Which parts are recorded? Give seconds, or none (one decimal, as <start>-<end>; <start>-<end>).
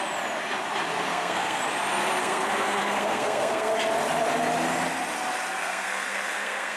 0.0-1.1; 1.6-2.2; 3.7-5.6